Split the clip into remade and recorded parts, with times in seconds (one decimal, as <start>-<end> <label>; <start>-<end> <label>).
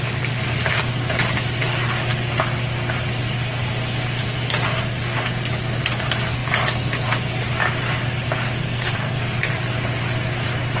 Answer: 0.0-8.6 recorded; 8.6-9.2 remade; 9.2-10.8 recorded